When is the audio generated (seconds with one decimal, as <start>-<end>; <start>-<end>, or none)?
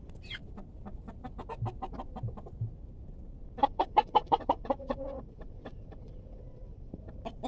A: 3.6-6.9